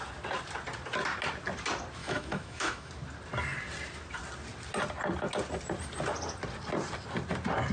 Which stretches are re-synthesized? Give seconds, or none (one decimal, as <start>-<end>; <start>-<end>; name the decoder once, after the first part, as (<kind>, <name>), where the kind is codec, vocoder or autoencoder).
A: 2.0-2.9 (autoencoder, DAC-VAE)